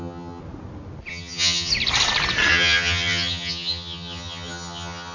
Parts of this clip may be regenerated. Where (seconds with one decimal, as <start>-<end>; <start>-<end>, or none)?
0.0-0.4; 1.1-1.7; 2.5-5.1